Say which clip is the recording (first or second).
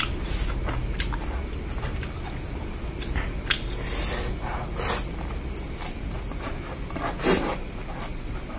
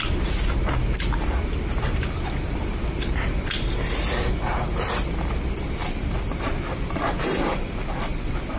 first